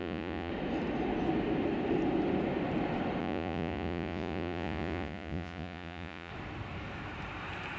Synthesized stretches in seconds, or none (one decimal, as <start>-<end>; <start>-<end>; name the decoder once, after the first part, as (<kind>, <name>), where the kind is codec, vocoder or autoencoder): 0.0-0.5 (vocoder, Vocos); 3.2-6.3